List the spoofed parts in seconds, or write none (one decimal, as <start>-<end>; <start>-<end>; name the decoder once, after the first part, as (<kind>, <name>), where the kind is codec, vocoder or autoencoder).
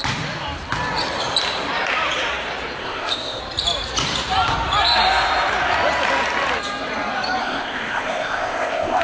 2.8-3.4 (codec, ZipCodec); 7.4-9.0